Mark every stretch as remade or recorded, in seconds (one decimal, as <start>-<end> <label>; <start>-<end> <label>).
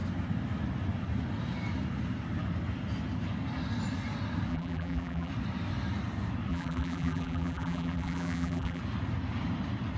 0.0-4.5 recorded; 4.5-5.3 remade; 5.3-6.5 recorded; 6.5-8.8 remade; 8.8-10.0 recorded